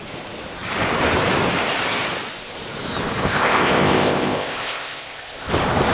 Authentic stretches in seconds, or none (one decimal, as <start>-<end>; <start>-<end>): 0.0-3.2; 5.5-5.9